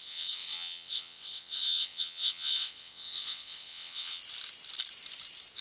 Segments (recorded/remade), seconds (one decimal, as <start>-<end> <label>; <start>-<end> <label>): 0.0-4.2 remade; 4.2-5.6 recorded